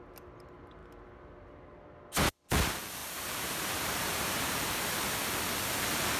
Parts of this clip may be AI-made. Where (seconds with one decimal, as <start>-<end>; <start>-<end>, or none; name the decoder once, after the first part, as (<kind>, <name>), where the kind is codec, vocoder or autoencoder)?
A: 3.0-4.9 (vocoder, BigVGAN v2)